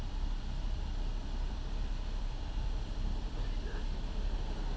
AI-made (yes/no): yes